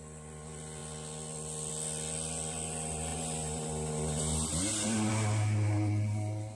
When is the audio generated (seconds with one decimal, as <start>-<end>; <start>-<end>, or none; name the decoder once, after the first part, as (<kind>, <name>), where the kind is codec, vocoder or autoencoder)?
none